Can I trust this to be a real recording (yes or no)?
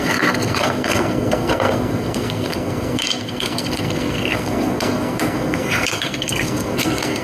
no